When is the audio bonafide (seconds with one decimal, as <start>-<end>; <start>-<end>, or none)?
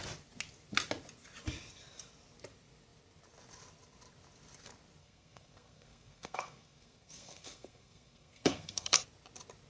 0.0-5.0; 9.0-9.7